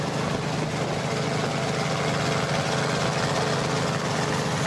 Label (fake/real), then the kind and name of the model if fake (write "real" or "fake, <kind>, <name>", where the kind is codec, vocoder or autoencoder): real